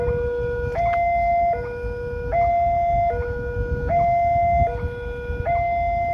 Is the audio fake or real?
real